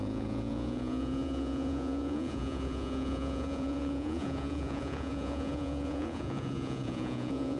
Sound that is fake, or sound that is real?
fake